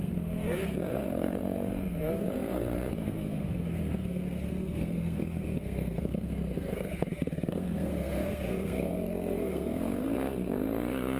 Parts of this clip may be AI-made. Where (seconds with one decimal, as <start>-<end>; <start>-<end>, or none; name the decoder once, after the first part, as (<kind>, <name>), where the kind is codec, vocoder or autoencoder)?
0.0-11.2 (codec, SNAC)